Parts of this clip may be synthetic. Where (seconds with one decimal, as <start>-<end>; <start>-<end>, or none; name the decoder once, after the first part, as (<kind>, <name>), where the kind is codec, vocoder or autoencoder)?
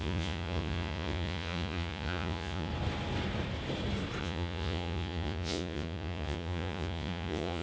0.0-2.7 (vocoder, Vocos); 4.2-7.6